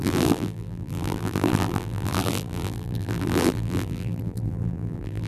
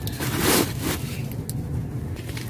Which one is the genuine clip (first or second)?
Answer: second